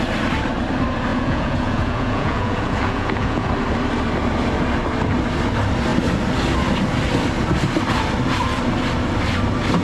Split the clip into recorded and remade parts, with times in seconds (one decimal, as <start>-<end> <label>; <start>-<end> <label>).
0.0-1.1 recorded; 1.1-3.5 remade; 3.5-9.8 recorded